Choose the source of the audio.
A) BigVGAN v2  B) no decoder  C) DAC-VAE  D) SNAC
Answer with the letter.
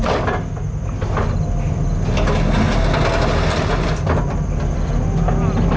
B